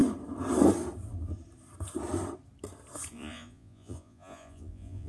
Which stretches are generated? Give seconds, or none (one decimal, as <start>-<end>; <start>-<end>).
3.1-5.1